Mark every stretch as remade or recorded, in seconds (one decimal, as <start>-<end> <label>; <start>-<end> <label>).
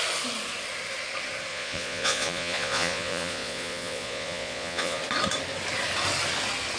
0.0-1.5 recorded; 1.5-5.0 remade; 5.0-6.8 recorded